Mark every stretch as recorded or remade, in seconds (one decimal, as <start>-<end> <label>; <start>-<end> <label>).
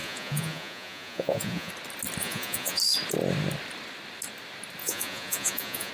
0.0-1.7 remade; 1.7-2.2 recorded; 2.2-2.8 remade; 2.8-4.8 recorded; 4.8-5.9 remade